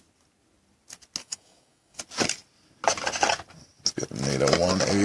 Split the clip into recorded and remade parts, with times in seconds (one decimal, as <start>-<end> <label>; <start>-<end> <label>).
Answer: 0.0-1.2 recorded; 1.2-2.0 remade; 2.0-5.0 recorded